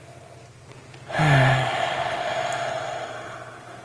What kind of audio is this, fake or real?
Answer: real